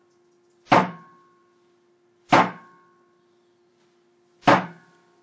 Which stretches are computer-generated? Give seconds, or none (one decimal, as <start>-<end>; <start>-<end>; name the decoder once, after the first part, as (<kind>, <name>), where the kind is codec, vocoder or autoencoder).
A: none